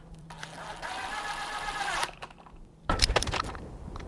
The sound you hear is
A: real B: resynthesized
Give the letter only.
B